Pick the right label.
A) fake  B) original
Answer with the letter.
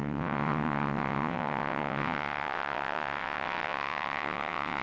A